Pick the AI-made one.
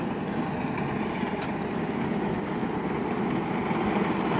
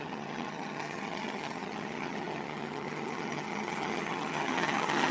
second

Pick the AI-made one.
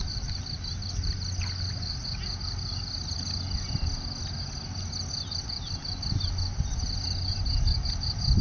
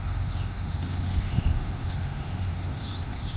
second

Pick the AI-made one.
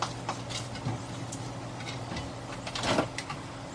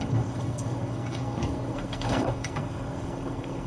second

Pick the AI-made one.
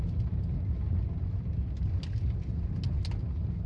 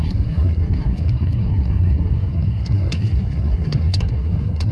second